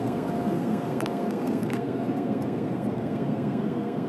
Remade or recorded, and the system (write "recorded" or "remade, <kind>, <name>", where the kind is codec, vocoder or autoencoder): remade, codec, SNAC